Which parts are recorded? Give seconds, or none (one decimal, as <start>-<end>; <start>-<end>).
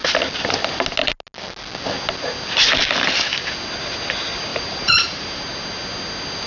0.0-4.5; 5.4-6.5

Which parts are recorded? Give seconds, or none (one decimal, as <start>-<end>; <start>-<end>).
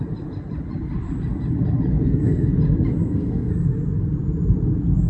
0.0-1.9; 2.5-3.0; 3.5-5.1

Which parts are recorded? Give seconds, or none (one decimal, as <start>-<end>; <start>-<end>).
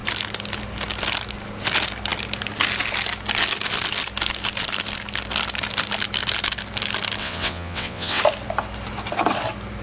0.0-7.2; 8.2-9.8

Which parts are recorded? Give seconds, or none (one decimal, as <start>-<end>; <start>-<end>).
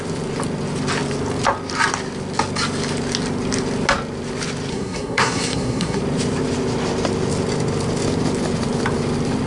0.0-4.7; 6.0-9.5